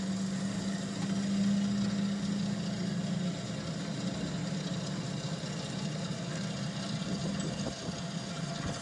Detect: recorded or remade recorded